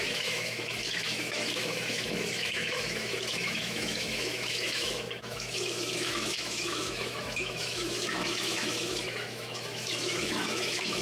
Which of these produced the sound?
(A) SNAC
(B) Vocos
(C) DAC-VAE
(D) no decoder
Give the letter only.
C